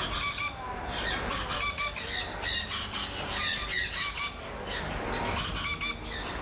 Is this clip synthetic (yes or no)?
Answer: no